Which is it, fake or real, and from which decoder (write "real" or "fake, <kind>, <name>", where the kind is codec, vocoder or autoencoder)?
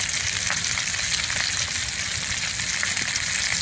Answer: real